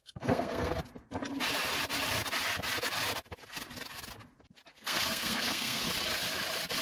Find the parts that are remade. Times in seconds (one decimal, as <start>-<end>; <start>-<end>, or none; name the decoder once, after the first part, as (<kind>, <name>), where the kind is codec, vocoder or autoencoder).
0.0-0.7 (codec, SNAC); 4.7-5.8